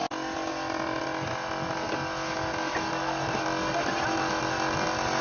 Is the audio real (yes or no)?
yes